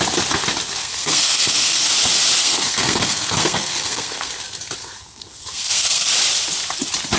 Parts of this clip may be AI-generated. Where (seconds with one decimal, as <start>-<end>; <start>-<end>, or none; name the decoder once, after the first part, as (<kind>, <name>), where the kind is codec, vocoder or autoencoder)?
0.8-1.9 (codec, SNAC); 2.4-4.3; 4.8-6.1

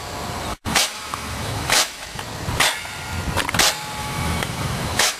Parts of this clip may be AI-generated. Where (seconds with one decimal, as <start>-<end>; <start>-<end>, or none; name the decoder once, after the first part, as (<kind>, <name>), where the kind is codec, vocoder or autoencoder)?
0.5-2.2 (autoencoder, DAC-VAE); 4.0-5.2

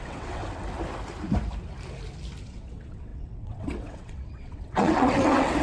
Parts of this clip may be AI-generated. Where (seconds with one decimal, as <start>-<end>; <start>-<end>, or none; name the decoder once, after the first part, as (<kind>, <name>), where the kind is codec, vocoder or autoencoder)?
0.0-0.4 (vocoder, WaveNeXt); 2.4-5.6

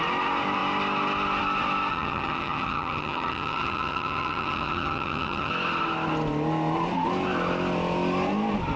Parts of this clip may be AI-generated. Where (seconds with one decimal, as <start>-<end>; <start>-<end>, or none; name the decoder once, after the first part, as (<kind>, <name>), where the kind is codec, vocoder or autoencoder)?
1.9-5.5 (vocoder, HiFi-GAN)

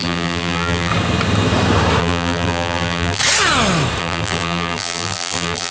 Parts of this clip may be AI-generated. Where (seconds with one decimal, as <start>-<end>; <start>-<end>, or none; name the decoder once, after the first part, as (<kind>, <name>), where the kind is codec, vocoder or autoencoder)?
0.0-0.9 (vocoder, BigVGAN v2); 2.0-3.2; 4.0-5.7